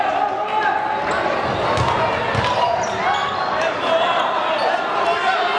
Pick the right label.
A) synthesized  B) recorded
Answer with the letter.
B